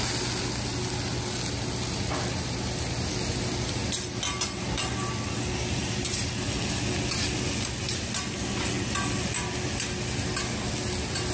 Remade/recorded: recorded